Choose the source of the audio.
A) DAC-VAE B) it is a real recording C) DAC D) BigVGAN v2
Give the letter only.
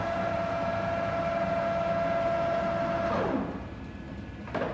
B